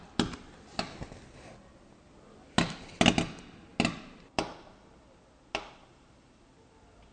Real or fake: real